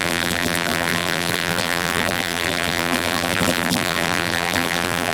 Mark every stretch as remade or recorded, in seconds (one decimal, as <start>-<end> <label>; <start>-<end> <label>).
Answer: 0.0-5.1 remade

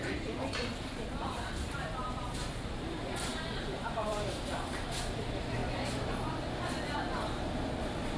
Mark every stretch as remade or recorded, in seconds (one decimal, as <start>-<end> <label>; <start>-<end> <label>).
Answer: 0.0-3.3 remade; 3.3-4.0 recorded; 4.0-5.6 remade; 5.6-6.3 recorded; 6.3-8.2 remade

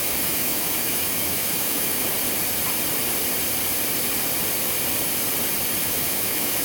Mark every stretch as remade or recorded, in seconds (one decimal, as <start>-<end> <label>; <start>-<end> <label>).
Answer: 0.0-2.1 remade; 2.1-5.8 recorded; 5.8-6.6 remade

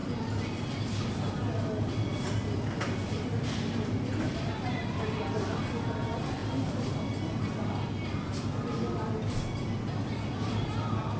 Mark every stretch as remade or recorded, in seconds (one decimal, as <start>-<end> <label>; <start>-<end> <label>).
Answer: 0.0-11.2 recorded

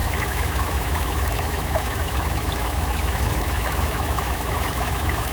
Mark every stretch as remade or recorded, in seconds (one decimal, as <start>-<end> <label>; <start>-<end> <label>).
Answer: 0.0-5.3 remade

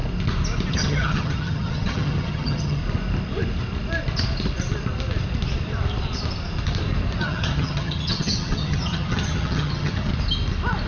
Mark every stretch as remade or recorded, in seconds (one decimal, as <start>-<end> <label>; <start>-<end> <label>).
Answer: 0.0-0.7 recorded; 0.7-2.8 remade; 2.8-7.2 recorded; 7.2-10.1 remade; 10.1-10.9 recorded